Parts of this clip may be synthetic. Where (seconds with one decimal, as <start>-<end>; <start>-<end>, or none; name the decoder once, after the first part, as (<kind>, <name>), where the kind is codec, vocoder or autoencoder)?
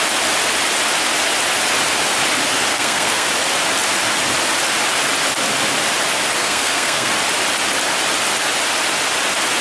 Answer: 2.7-3.3 (codec, SNAC); 6.4-7.1